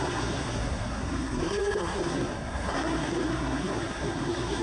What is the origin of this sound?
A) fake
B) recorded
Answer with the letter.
A